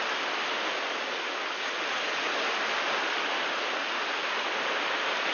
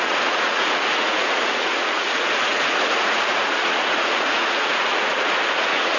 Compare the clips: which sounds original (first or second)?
first